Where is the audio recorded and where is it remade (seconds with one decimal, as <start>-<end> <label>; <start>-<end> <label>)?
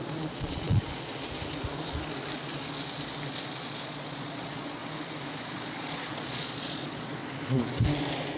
0.0-1.1 remade; 1.1-3.6 recorded; 3.6-4.8 remade; 4.8-5.4 recorded; 5.4-7.2 remade; 7.2-8.4 recorded